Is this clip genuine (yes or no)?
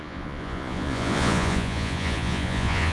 no